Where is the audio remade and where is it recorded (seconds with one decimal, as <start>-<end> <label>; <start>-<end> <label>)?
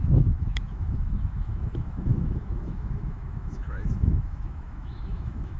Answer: 0.0-5.6 remade